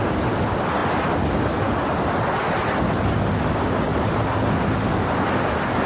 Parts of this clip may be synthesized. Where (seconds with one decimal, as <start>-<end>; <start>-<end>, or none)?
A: none